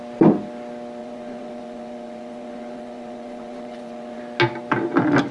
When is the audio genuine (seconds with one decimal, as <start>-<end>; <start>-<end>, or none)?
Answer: 0.0-1.0; 4.2-5.3